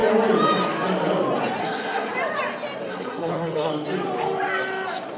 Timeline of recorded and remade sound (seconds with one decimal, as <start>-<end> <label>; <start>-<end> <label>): 0.0-1.6 recorded; 1.6-2.1 remade; 2.1-2.9 recorded; 2.9-3.7 remade; 3.7-5.2 recorded